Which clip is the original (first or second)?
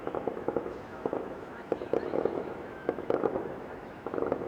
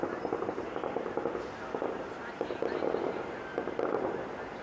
second